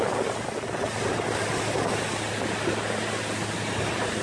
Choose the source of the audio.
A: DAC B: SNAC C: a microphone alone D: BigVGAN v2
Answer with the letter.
C